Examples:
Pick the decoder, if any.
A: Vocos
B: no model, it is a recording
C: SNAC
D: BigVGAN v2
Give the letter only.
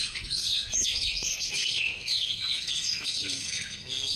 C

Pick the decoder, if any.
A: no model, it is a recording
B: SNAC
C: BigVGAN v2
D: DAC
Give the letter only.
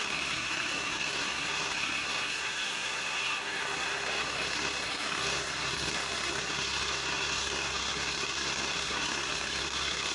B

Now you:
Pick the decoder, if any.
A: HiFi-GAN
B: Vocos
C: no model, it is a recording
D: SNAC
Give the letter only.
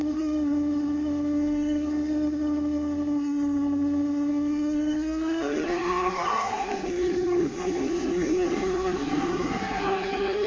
D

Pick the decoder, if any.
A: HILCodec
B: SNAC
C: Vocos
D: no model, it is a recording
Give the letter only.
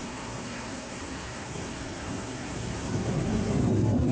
B